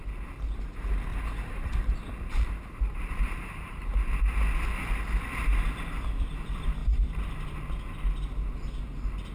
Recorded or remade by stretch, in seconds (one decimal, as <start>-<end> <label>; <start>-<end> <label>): 0.0-1.1 recorded; 1.1-4.1 remade; 4.1-6.8 recorded; 6.8-7.4 remade; 7.4-9.3 recorded